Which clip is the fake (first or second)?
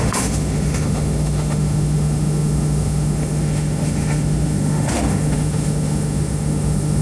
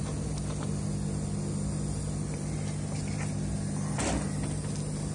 first